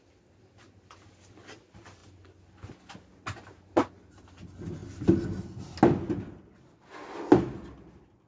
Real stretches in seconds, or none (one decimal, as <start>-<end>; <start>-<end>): 0.0-8.3